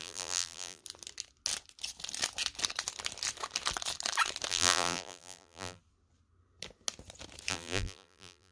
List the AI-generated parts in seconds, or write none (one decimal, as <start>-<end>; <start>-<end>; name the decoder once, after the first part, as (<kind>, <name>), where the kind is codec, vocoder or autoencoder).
0.0-0.8 (vocoder, BigVGAN v2); 4.5-5.8; 7.5-8.5